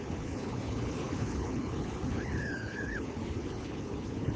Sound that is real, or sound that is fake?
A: fake